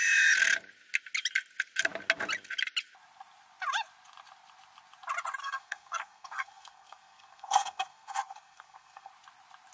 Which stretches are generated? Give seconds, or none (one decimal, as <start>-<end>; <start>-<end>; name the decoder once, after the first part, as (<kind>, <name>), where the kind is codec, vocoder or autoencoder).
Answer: 5.4-9.1 (codec, SNAC)